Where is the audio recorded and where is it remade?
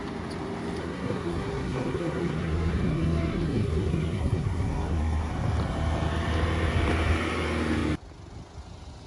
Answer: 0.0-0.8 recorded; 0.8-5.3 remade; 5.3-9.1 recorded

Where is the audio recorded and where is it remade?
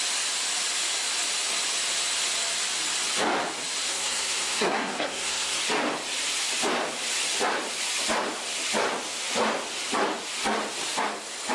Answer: 0.0-3.9 recorded; 3.9-5.6 remade; 5.6-11.5 recorded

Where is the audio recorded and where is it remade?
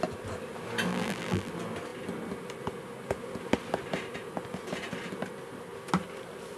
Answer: 0.0-0.9 recorded; 0.9-1.5 remade; 1.5-6.6 recorded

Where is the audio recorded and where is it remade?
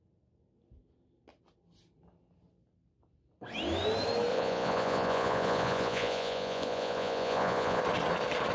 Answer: 0.0-4.3 recorded; 4.3-7.8 remade; 7.8-8.5 recorded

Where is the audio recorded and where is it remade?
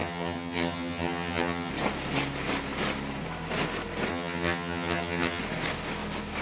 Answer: 0.0-1.7 remade; 1.7-4.1 recorded; 4.1-5.4 remade; 5.4-6.4 recorded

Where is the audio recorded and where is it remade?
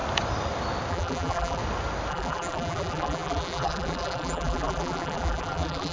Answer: 0.0-0.9 recorded; 0.9-1.6 remade; 1.6-2.1 recorded; 2.1-5.9 remade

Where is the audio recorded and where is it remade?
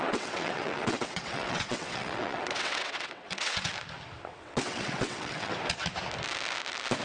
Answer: 0.0-3.7 remade; 3.7-4.3 recorded; 4.3-5.5 remade; 5.5-7.0 recorded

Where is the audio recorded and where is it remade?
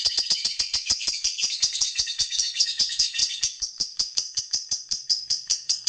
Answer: 0.0-5.9 remade